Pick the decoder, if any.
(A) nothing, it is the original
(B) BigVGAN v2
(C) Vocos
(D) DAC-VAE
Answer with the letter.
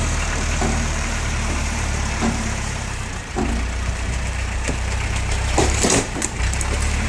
B